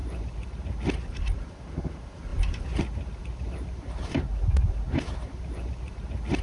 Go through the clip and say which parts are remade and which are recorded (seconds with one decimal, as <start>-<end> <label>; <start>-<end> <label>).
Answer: 0.0-1.6 remade; 1.6-3.2 recorded; 3.2-6.4 remade